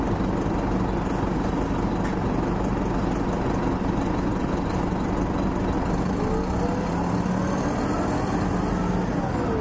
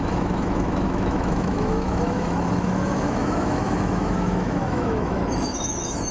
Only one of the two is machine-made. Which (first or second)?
second